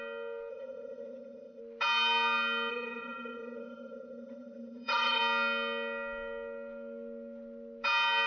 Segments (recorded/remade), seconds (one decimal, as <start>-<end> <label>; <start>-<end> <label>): 0.0-0.5 recorded; 0.5-1.6 remade; 1.6-2.7 recorded; 2.7-5.2 remade; 5.2-8.3 recorded